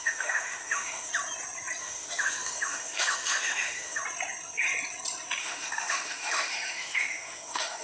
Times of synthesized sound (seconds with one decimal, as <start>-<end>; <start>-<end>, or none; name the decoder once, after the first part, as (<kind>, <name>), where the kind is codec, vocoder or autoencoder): 0.0-1.1 (autoencoder, DAC-VAE); 1.8-4.0; 5.4-7.8